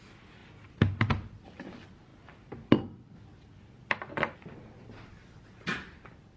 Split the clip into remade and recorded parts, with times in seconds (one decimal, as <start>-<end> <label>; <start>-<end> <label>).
0.0-6.4 recorded